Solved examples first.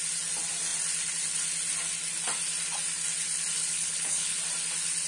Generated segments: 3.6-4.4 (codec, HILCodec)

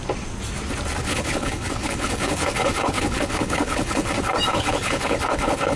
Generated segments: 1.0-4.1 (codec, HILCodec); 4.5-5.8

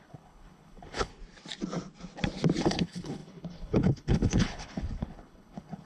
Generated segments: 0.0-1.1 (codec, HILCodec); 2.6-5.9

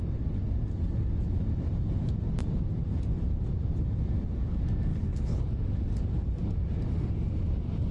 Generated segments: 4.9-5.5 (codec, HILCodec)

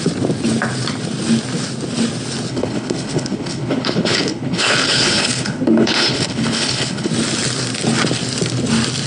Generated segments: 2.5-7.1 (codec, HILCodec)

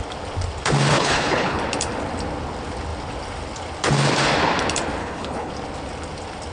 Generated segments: 0.9-1.6 (codec, HILCodec); 5.0-5.5